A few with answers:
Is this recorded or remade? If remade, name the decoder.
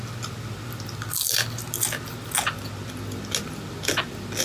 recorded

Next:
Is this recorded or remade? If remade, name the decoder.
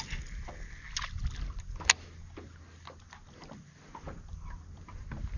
recorded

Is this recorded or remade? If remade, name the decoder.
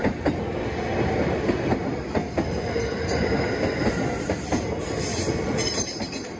recorded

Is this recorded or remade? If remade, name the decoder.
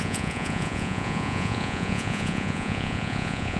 remade, vocoder, Vocos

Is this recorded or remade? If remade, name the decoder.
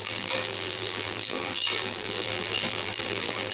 remade, vocoder, BigVGAN v2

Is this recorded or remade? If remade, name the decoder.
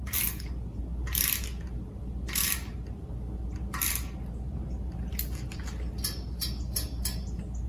recorded